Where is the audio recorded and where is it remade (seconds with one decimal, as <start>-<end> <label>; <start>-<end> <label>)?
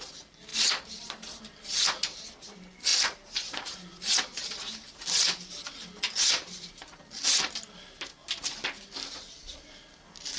0.0-10.4 recorded